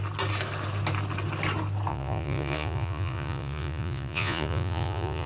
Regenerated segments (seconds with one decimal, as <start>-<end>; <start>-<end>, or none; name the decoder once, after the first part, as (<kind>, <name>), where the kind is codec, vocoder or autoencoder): 1.9-5.3 (vocoder, Vocos)